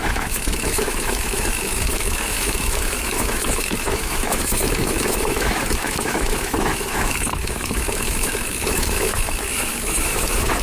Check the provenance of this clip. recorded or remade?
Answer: remade